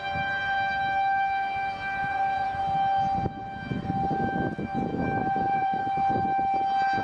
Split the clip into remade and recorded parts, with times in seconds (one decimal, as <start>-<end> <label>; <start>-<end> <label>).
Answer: 0.0-2.0 recorded; 2.0-2.6 remade; 2.6-5.2 recorded; 5.2-5.8 remade; 5.8-7.0 recorded